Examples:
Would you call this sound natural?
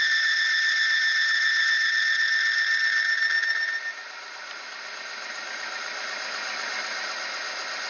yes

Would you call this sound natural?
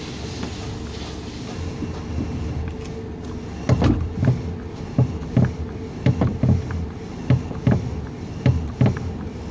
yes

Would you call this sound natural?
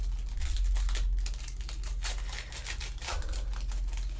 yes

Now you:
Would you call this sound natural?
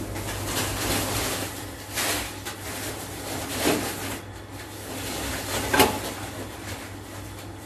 yes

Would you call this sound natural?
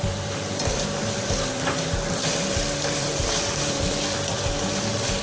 no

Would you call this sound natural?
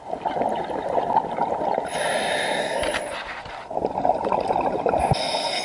yes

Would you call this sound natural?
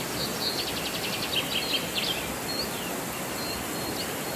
yes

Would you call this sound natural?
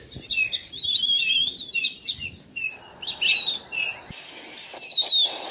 yes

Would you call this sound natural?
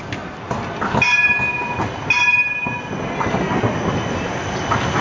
yes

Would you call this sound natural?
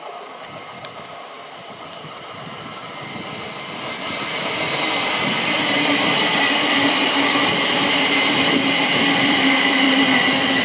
no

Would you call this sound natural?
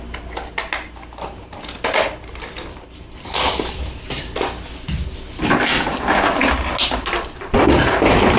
yes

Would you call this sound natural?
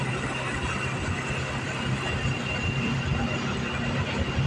yes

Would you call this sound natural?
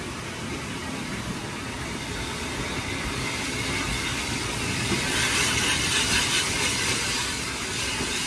yes